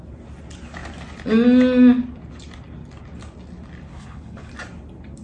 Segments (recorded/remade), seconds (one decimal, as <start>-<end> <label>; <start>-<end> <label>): 0.0-3.9 recorded; 3.9-4.5 remade; 4.5-5.2 recorded